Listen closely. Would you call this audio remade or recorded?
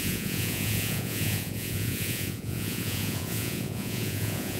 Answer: remade